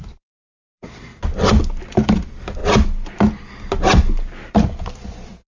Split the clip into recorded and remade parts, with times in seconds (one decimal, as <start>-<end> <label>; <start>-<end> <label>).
0.0-1.1 remade; 1.1-1.8 recorded; 1.8-2.6 remade; 2.6-4.5 recorded; 4.5-5.5 remade